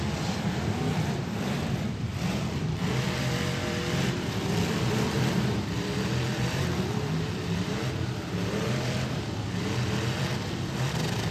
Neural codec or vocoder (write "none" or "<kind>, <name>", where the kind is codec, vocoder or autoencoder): vocoder, BigVGAN v2